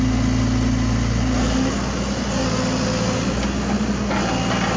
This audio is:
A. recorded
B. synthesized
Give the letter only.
A